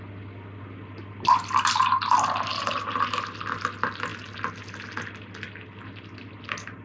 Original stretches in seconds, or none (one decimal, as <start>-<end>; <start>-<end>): 0.0-6.8